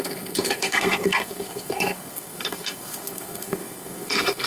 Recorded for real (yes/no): no